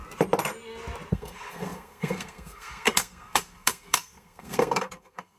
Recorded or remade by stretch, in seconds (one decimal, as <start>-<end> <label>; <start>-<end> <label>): 0.0-1.1 recorded; 1.1-5.4 remade